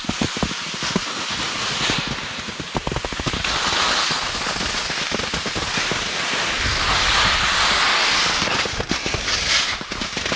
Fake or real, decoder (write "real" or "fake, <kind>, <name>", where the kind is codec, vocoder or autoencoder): real